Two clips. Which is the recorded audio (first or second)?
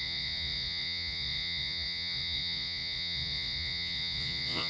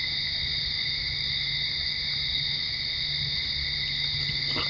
second